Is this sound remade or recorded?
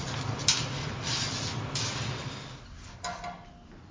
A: recorded